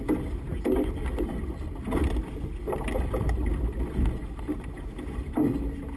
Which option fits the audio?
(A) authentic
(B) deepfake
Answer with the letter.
A